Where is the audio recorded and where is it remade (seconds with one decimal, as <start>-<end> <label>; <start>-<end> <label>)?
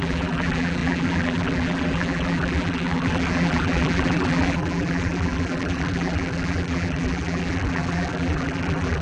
0.0-9.0 remade